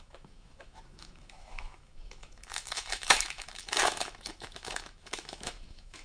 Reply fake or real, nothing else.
fake